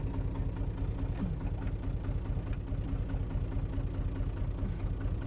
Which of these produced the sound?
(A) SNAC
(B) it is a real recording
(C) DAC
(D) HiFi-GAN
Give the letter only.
B